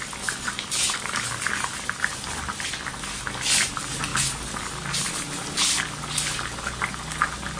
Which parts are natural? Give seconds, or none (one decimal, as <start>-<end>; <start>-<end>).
0.0-7.6